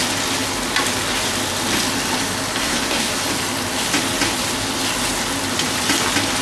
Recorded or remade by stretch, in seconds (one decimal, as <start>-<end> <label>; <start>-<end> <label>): 0.0-2.6 recorded; 2.6-3.1 remade; 3.1-6.4 recorded